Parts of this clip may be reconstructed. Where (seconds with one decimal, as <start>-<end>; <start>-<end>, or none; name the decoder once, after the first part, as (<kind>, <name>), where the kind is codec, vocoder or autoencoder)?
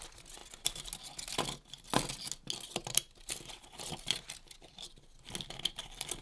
none